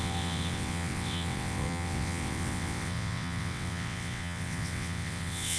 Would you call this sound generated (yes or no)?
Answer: yes